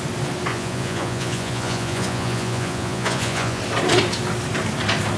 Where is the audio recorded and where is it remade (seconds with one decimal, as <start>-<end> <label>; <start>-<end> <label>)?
0.0-0.5 recorded; 0.5-3.6 remade; 3.6-5.2 recorded